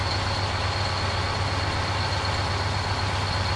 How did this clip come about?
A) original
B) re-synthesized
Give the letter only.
A